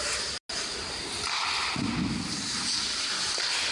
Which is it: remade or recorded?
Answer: recorded